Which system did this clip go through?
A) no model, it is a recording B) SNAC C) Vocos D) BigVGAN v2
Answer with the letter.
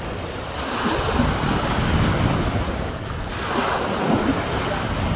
A